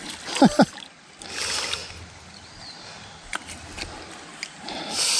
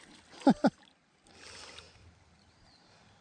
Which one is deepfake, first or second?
second